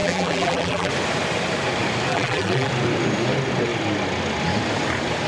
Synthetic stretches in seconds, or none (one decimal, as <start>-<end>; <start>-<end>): 0.0-0.9; 2.1-2.7